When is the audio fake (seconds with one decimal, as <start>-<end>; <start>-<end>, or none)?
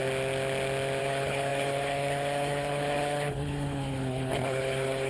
1.0-5.1